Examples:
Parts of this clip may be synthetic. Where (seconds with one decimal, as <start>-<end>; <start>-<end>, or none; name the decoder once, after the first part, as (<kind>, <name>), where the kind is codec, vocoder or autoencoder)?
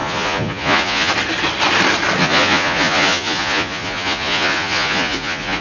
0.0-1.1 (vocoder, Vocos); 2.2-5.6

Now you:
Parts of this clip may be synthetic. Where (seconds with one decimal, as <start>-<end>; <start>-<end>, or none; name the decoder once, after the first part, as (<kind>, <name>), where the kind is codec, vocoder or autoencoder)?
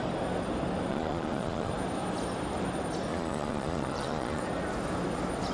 0.9-1.7 (vocoder, Vocos); 3.1-4.4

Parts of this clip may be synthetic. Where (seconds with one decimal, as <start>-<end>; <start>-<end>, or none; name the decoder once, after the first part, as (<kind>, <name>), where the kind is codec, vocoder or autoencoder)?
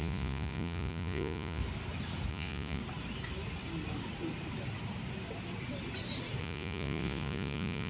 0.0-1.6 (vocoder, Vocos); 2.3-2.8; 6.4-7.9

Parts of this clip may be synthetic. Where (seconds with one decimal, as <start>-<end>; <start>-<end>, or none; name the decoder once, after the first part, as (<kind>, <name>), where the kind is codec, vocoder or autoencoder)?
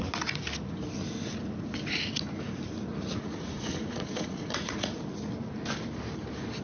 2.9-5.0 (vocoder, Vocos)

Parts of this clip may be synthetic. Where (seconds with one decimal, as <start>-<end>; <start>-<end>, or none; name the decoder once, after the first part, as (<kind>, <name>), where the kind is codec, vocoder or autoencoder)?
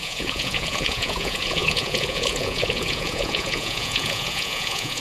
0.0-5.0 (vocoder, Vocos)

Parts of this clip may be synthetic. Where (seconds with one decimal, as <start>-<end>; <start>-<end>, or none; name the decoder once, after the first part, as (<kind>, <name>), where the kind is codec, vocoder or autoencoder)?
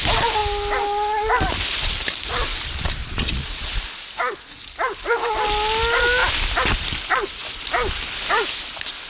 3.0-3.8 (vocoder, Vocos)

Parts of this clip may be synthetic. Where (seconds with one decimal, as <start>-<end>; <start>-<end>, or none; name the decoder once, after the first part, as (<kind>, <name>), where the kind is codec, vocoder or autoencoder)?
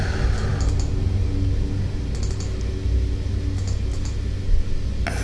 none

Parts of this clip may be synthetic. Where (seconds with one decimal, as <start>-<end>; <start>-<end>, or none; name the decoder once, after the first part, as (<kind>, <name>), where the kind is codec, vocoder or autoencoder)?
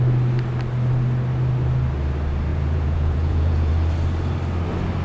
2.5-3.7 (vocoder, Vocos)